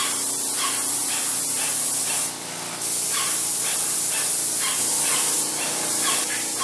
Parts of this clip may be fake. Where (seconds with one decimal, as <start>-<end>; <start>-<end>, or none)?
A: none